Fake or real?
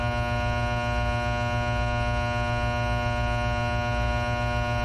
real